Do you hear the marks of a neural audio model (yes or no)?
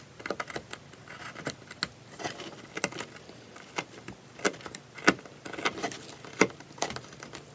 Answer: no